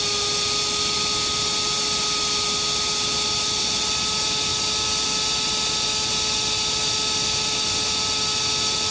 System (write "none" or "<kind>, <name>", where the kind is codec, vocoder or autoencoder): none